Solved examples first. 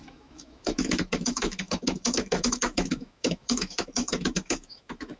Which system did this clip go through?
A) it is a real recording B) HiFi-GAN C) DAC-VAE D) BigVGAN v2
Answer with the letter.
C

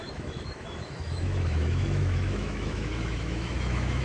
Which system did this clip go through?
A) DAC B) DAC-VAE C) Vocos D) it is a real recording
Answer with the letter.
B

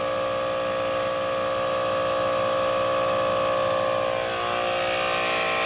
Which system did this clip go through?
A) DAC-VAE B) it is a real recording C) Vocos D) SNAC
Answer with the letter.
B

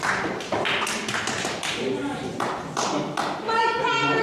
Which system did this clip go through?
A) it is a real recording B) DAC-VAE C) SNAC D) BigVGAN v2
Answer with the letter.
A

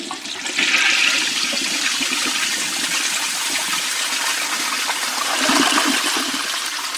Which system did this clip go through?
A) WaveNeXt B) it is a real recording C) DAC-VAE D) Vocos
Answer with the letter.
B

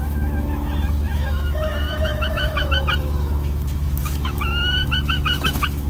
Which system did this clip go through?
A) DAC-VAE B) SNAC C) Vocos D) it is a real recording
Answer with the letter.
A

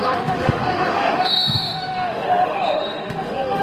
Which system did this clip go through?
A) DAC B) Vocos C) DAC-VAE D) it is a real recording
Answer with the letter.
C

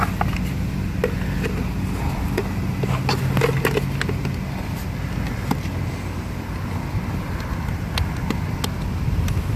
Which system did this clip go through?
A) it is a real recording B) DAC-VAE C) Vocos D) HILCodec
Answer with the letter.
A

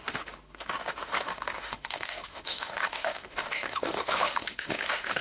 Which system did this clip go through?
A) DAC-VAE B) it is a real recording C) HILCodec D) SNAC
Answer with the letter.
A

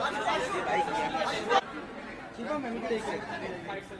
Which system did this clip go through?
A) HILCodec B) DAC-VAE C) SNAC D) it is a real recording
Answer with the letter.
D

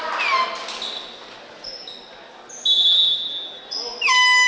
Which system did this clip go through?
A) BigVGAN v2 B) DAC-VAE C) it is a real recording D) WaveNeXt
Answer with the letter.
C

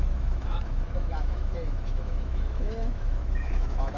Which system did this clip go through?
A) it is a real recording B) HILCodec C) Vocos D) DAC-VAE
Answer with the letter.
D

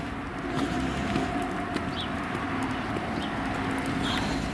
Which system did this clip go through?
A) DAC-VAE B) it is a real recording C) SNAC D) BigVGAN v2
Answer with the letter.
B